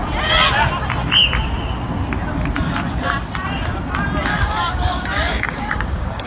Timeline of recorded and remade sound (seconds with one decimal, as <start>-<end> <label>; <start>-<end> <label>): 0.0-4.3 recorded; 4.3-6.3 remade